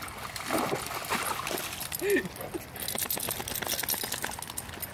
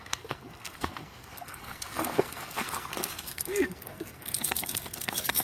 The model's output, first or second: second